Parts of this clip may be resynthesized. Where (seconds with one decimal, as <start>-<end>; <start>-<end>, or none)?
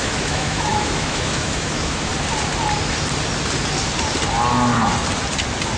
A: 0.0-2.1